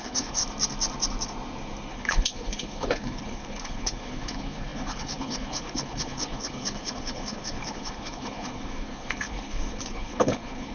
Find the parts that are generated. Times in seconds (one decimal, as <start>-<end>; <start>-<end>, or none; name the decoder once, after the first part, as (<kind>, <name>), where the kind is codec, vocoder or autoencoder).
0.0-0.4 (codec, HILCodec); 1.9-10.7